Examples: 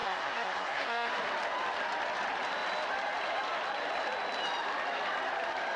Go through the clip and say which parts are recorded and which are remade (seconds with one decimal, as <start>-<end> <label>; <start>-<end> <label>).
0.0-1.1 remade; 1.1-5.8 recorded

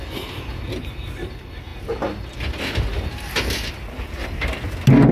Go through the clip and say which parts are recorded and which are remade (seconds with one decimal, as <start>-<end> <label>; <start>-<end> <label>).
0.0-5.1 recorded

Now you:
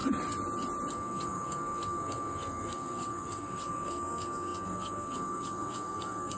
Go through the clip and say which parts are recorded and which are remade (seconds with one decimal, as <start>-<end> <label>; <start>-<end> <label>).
0.0-0.9 recorded; 0.9-6.4 remade

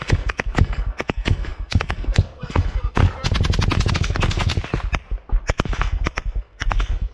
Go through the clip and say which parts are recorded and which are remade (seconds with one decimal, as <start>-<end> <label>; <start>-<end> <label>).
0.0-3.0 remade; 3.0-3.9 recorded; 3.9-4.5 remade; 4.5-5.4 recorded; 5.4-7.1 remade

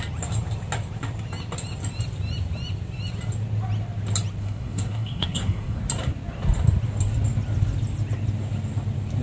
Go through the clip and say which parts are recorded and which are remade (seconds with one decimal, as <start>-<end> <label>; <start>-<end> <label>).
0.0-4.4 recorded; 4.4-5.8 remade; 5.8-9.2 recorded